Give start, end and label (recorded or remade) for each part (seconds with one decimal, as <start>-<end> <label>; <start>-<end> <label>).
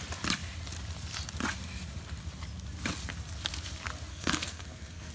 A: 0.0-4.1 recorded; 4.1-5.1 remade